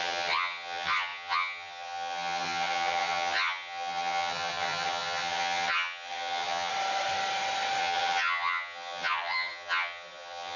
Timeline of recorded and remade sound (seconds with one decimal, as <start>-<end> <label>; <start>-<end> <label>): 0.0-6.7 remade; 6.7-7.8 recorded; 7.8-10.6 remade